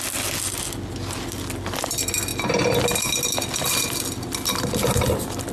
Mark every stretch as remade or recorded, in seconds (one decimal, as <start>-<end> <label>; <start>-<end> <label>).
0.0-5.5 recorded